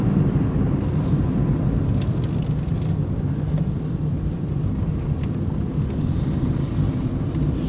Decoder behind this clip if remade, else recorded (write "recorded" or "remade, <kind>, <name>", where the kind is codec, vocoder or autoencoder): recorded